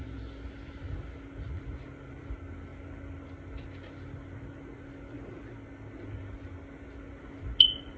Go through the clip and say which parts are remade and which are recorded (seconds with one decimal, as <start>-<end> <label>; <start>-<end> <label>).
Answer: 0.0-8.0 recorded